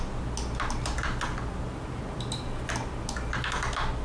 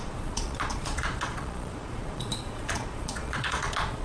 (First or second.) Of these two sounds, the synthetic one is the second